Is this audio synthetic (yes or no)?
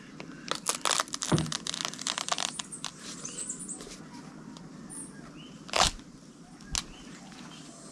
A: no